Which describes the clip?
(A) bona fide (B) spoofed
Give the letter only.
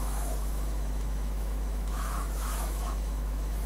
B